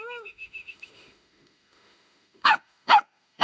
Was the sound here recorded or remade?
remade